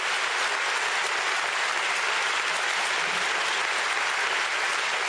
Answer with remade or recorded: recorded